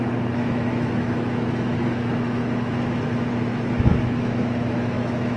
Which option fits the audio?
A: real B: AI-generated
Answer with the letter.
B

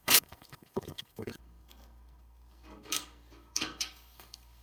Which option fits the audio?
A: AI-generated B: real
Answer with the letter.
A